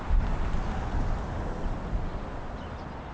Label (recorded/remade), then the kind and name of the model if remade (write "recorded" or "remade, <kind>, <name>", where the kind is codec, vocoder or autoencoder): recorded